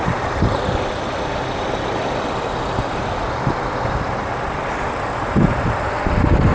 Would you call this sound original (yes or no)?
yes